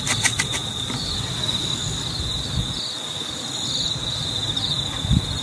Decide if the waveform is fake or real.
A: real